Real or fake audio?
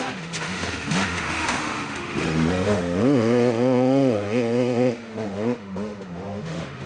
fake